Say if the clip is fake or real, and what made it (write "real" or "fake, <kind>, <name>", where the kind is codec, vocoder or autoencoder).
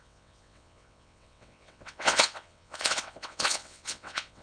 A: fake, vocoder, WaveNeXt